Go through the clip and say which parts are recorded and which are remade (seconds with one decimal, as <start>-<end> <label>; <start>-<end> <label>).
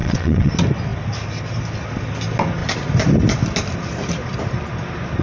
0.0-0.5 remade; 0.5-5.2 recorded